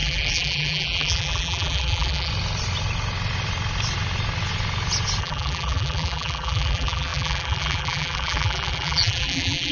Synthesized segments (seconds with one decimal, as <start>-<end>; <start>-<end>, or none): 0.0-2.3; 5.2-9.7